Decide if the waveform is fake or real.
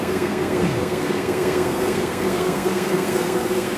fake